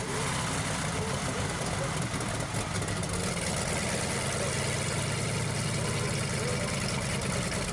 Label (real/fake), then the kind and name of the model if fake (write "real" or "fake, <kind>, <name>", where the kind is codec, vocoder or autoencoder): real